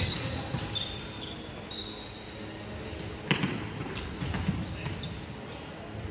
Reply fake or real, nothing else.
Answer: real